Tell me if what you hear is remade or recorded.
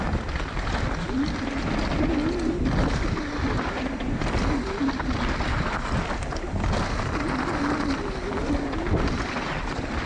recorded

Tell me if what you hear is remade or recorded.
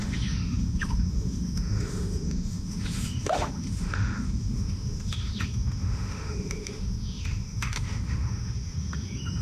remade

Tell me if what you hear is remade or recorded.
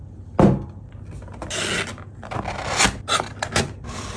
recorded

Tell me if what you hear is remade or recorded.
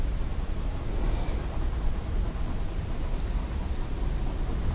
recorded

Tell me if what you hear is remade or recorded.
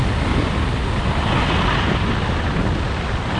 recorded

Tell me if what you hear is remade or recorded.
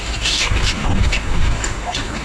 remade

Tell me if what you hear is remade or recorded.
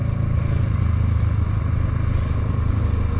recorded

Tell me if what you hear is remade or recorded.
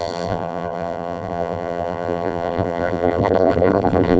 remade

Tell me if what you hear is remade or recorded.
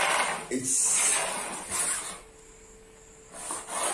recorded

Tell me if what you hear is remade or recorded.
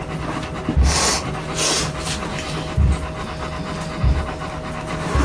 recorded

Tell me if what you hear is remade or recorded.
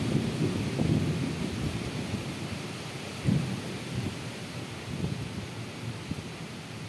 recorded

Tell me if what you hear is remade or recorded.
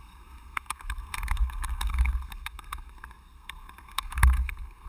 remade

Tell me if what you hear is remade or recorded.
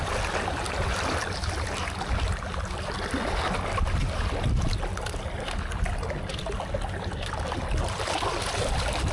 recorded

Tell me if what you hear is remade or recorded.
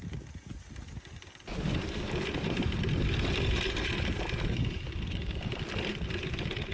recorded